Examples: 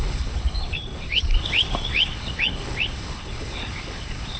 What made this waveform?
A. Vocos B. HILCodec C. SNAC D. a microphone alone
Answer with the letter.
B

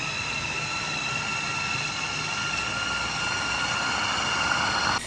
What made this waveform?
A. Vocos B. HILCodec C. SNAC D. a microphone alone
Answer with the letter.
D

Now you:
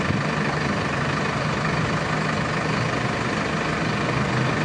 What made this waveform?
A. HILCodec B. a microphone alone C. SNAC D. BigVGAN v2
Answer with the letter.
B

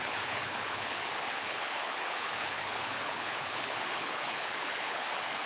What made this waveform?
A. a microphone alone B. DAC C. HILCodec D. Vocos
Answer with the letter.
C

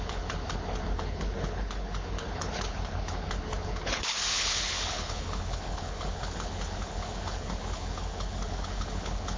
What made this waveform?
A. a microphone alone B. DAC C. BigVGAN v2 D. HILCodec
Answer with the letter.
D